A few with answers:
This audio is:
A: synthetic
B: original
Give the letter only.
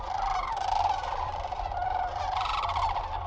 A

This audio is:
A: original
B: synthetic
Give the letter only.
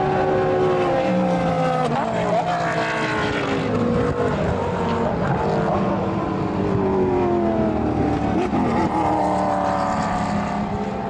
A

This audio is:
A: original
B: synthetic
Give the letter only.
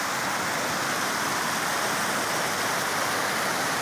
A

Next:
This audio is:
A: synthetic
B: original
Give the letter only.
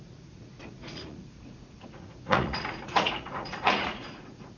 A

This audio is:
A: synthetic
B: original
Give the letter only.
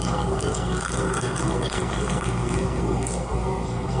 A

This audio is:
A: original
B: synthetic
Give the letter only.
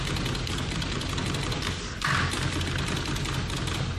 A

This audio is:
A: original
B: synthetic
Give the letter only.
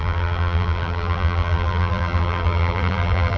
B